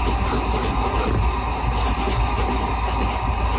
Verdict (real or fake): real